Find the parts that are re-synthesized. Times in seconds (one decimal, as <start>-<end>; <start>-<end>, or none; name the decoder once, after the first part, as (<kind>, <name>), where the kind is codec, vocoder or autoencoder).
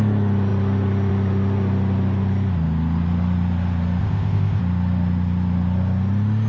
4.0-4.6 (codec, ZipCodec)